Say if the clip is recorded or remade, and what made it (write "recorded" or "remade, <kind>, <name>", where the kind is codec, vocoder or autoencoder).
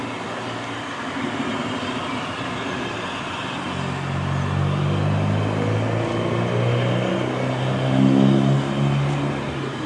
recorded